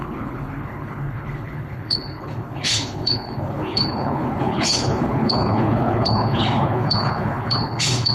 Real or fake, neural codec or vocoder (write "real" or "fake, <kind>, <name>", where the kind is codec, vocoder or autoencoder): fake, codec, HILCodec